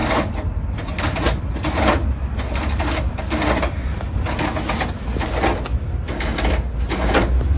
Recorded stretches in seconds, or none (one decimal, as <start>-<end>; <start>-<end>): 1.5-2.0; 4.4-7.6